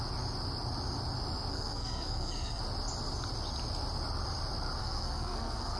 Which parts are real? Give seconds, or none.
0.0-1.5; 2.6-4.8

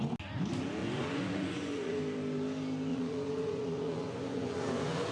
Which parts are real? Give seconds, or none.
0.0-0.8; 2.0-2.9

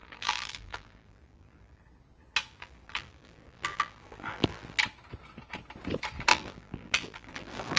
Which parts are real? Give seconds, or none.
1.8-2.5; 4.8-6.3

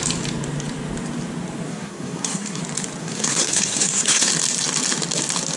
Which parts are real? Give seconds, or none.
0.0-1.7; 2.6-3.0; 4.3-5.6

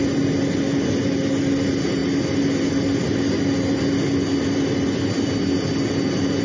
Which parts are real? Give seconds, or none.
0.0-6.4

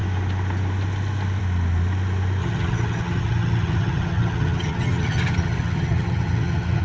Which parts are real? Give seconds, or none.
0.0-2.4

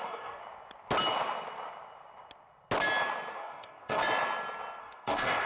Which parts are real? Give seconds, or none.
0.4-3.3; 4.0-4.8

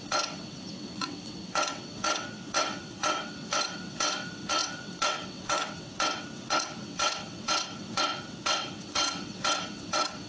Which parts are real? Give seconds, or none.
none